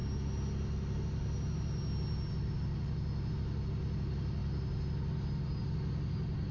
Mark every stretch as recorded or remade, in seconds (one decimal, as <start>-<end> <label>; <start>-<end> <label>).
0.0-6.5 recorded